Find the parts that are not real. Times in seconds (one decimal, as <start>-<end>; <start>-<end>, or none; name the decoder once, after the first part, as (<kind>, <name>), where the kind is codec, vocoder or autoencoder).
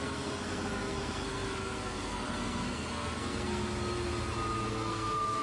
0.0-3.6 (codec, SNAC); 4.7-5.4